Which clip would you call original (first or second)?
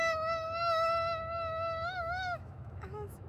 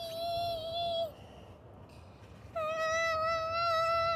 second